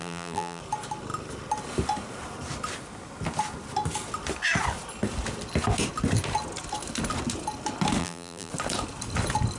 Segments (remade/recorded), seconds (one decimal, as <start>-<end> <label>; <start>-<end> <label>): 0.0-0.6 remade; 0.6-8.0 recorded; 8.0-8.5 remade; 8.5-9.6 recorded